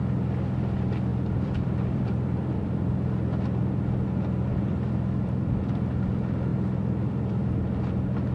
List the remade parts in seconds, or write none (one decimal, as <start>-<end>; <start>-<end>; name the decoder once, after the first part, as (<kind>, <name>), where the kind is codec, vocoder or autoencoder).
1.1-3.7 (vocoder, BigVGAN v2); 4.5-5.6

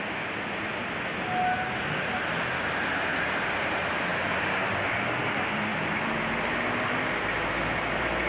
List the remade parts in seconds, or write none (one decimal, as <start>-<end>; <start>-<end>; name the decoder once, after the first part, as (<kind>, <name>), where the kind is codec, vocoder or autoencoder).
none

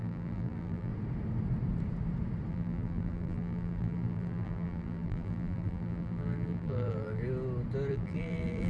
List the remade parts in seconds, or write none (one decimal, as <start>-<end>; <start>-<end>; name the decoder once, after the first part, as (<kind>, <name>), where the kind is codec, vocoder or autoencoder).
0.0-0.9 (vocoder, BigVGAN v2); 2.5-7.2; 7.9-8.7